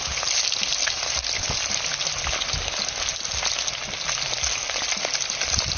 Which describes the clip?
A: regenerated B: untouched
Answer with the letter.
B